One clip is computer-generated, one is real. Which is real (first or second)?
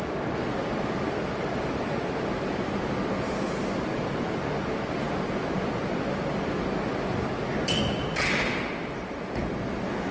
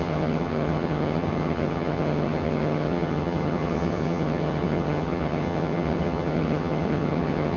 first